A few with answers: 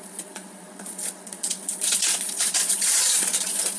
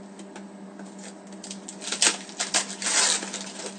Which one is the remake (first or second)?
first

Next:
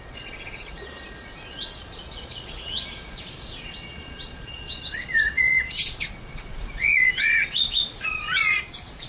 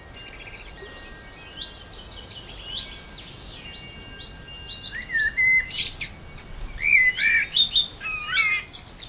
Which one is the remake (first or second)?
first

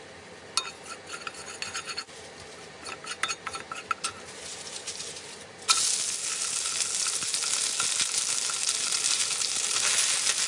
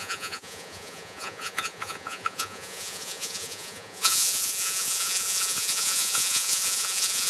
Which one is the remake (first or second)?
second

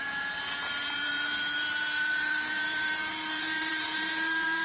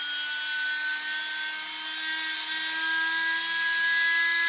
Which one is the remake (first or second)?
first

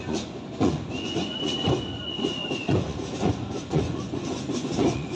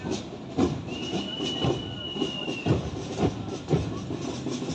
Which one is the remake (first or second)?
first